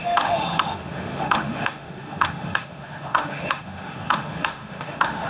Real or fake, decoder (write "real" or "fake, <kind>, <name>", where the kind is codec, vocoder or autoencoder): fake, autoencoder, DAC-VAE